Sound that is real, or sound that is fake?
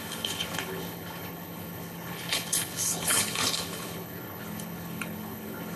fake